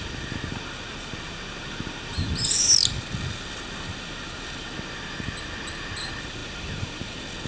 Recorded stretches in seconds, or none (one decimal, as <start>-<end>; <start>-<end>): 0.0-7.5